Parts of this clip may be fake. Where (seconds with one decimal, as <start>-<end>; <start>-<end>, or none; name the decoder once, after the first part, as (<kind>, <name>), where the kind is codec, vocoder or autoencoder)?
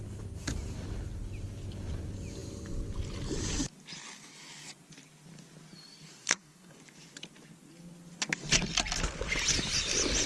6.2-6.8 (codec, SNAC)